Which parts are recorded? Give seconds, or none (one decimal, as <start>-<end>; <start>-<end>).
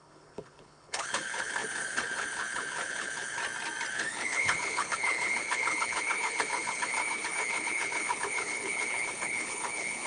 3.4-3.9